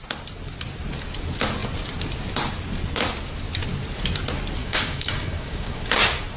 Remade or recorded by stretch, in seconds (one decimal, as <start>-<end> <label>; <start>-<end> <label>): 0.0-4.6 recorded; 4.6-5.8 remade; 5.8-6.4 recorded